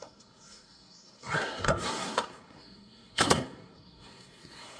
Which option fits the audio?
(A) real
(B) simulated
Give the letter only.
B